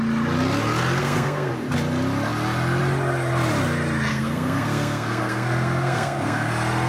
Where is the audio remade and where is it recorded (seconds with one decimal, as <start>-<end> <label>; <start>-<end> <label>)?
0.0-1.0 recorded; 1.0-1.5 remade; 1.5-4.1 recorded; 4.1-6.5 remade; 6.5-6.9 recorded